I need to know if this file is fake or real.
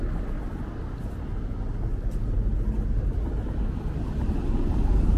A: real